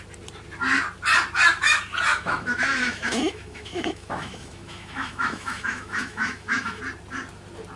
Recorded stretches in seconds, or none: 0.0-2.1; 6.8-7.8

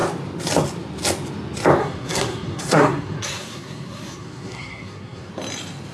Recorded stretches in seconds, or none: 0.0-1.8; 5.3-5.9

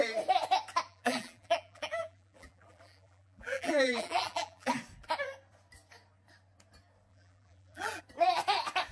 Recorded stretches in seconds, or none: 0.0-0.9; 4.7-7.1; 8.0-8.9

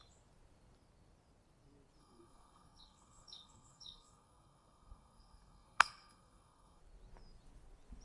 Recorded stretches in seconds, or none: 0.0-2.0; 6.8-8.0